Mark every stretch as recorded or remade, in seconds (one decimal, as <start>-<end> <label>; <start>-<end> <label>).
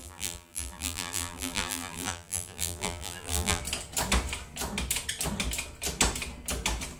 0.0-3.6 remade; 3.6-7.0 recorded